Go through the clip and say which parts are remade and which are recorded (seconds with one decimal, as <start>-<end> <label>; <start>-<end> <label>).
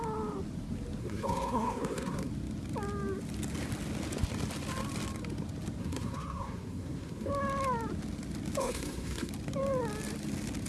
0.0-1.0 recorded; 1.0-2.3 remade; 2.3-5.8 recorded; 5.8-7.3 remade; 7.3-8.6 recorded; 8.6-9.3 remade; 9.3-10.7 recorded